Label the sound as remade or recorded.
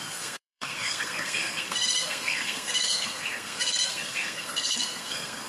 remade